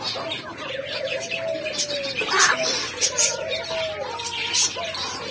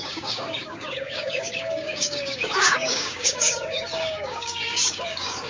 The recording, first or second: first